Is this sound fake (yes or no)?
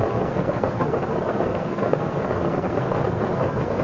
yes